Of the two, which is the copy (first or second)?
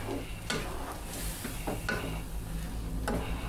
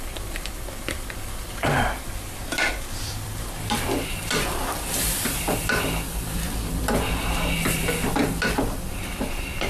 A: second